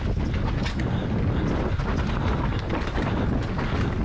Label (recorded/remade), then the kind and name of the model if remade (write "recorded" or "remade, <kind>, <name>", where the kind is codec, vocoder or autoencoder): recorded